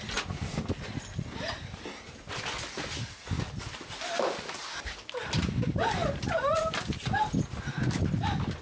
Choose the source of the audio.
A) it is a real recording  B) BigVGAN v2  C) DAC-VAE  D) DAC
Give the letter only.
A